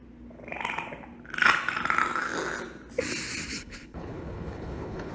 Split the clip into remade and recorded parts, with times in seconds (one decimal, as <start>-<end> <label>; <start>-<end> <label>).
0.0-3.5 recorded; 3.5-5.1 remade